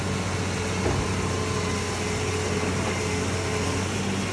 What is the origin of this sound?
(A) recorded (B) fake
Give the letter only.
A